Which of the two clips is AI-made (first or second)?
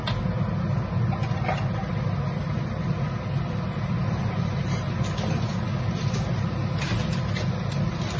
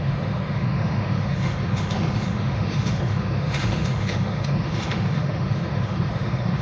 second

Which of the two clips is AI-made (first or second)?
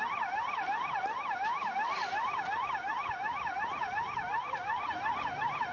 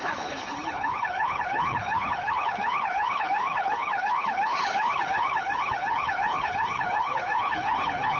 second